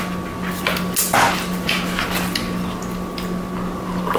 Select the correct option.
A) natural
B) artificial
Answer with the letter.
A